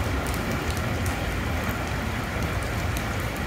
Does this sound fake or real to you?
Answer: real